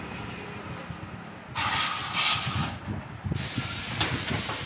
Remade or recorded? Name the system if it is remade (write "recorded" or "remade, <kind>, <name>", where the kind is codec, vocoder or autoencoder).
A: recorded